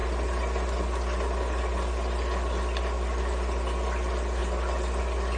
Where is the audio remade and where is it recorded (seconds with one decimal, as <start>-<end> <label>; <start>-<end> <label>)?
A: 0.0-5.4 recorded